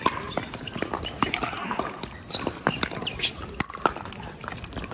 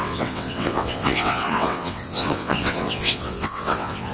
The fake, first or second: second